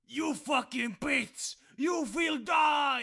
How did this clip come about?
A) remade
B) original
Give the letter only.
A